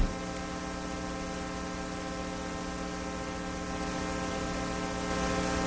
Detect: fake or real real